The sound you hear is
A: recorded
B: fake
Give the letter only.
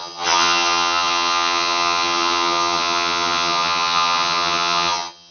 B